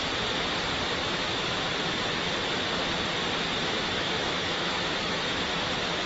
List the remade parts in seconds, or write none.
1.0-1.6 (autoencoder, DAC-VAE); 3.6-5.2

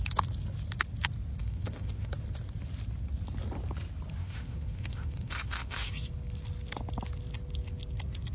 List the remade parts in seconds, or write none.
1.4-2.1 (autoencoder, DAC-VAE); 4.2-5.9